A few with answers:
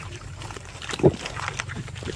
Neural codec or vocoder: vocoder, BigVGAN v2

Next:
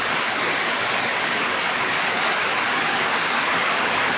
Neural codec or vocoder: codec, DAC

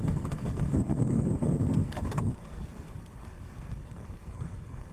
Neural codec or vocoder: codec, SNAC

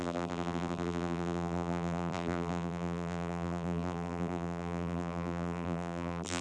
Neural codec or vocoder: vocoder, BigVGAN v2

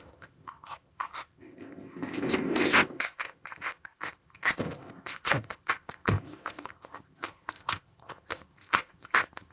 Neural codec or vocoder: codec, ZipCodec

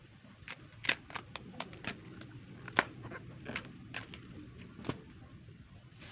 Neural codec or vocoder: none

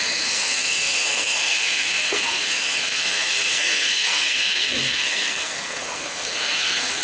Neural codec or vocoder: codec, SNAC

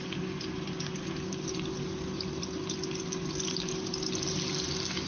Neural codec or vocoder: none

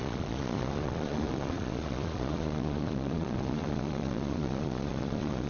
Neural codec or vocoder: vocoder, Vocos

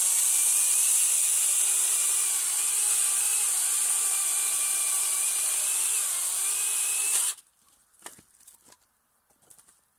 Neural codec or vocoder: none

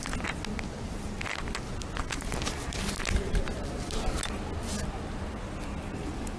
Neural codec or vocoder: none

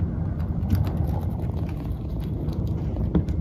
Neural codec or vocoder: none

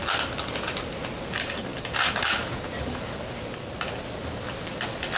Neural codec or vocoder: none